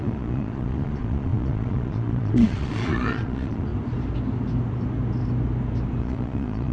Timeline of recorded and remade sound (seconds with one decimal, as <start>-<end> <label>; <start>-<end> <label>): 0.0-3.7 remade; 3.7-6.0 recorded; 6.0-6.7 remade